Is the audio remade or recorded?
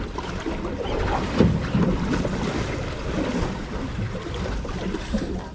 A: remade